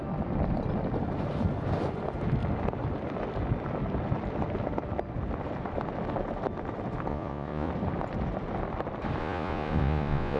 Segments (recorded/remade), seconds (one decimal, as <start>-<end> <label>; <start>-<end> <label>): 0.0-7.1 recorded; 7.1-7.7 remade; 7.7-9.2 recorded; 9.2-10.4 remade